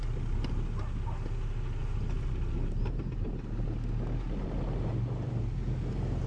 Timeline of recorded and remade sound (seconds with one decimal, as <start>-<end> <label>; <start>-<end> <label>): 0.0-6.3 recorded